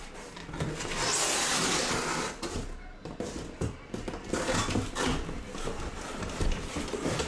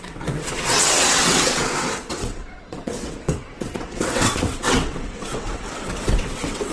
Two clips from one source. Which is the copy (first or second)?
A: second